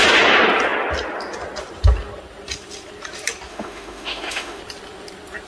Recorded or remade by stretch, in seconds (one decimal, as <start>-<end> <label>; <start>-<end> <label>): 0.0-3.5 recorded; 3.5-4.6 remade; 4.6-5.5 recorded

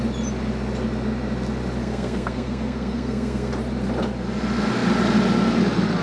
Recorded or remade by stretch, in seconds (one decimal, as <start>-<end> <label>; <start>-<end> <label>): 0.0-1.8 recorded; 1.8-3.5 remade; 3.5-6.0 recorded

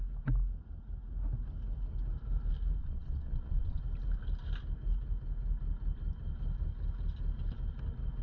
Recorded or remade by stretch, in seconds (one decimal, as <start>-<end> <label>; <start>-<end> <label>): 0.0-2.8 recorded; 2.8-3.8 remade; 3.8-8.2 recorded

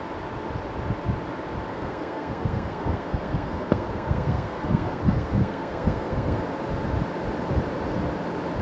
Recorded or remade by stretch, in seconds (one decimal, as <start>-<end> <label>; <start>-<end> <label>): 0.0-1.7 recorded; 1.7-6.4 remade; 6.4-8.6 recorded

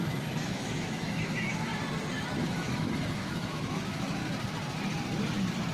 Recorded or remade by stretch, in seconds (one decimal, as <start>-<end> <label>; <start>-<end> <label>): 0.0-1.7 remade; 1.7-2.4 recorded; 2.4-4.2 remade; 4.2-5.7 recorded

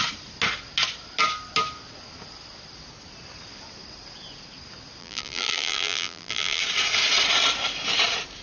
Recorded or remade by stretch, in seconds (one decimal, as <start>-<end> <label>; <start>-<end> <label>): 0.0-5.0 recorded; 5.0-6.6 remade; 6.6-8.4 recorded

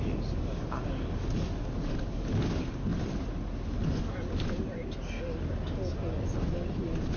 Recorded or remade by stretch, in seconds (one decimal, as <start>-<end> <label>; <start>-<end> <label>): 0.0-7.2 recorded